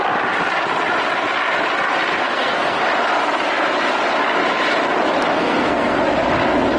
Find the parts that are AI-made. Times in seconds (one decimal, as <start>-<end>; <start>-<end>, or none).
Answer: 2.2-2.8; 5.3-6.0